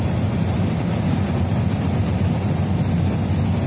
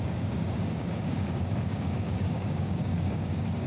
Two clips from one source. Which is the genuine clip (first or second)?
first